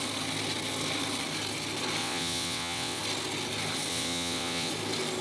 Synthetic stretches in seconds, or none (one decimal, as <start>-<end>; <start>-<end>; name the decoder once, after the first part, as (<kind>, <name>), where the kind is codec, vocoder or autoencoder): 2.0-3.0 (vocoder, WaveNeXt); 3.9-4.7